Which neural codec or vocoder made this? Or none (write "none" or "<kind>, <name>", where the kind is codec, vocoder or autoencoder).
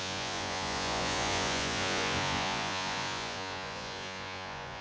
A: vocoder, Vocos